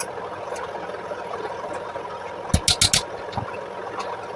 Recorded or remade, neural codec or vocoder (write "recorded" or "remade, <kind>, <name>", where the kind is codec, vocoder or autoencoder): recorded